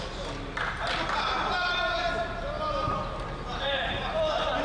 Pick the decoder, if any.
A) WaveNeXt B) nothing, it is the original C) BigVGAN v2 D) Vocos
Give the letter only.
B